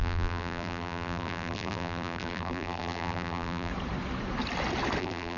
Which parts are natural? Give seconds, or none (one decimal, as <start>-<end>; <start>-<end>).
3.7-5.0